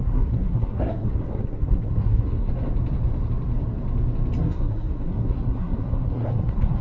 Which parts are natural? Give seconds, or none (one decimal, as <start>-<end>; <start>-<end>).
2.5-4.4